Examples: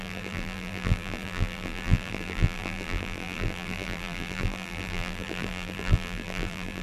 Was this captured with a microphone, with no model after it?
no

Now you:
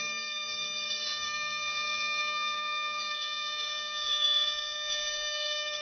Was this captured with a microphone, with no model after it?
no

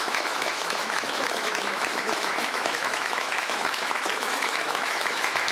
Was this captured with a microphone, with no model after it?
no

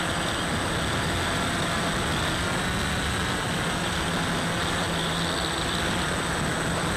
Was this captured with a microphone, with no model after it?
yes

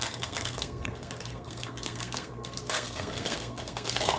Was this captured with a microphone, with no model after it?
no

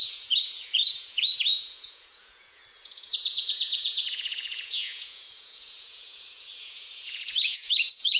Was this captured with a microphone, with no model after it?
no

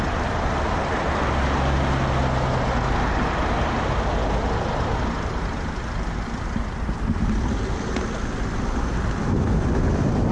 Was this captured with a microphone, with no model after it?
yes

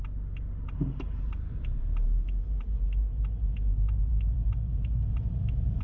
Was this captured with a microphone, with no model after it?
no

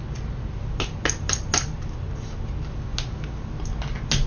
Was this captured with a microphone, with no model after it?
yes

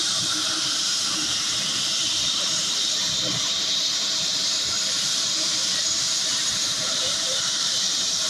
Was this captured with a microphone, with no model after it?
no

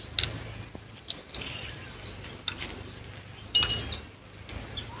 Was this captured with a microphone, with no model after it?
yes